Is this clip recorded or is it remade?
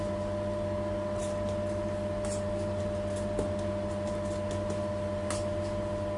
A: recorded